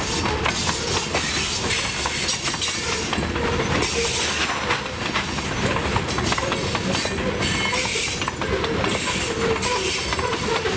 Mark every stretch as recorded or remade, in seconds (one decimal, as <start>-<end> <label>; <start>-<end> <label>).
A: 0.0-10.8 recorded